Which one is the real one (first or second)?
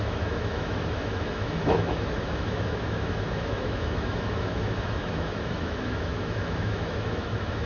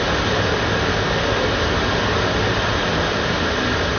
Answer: second